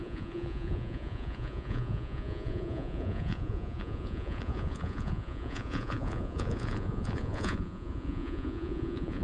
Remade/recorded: remade